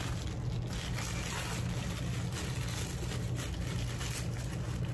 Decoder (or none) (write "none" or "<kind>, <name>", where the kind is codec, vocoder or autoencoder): none